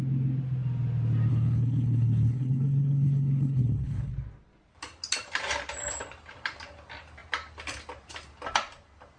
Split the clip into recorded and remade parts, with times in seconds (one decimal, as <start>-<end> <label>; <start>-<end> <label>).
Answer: 0.0-1.3 recorded; 1.3-4.1 remade; 4.1-9.2 recorded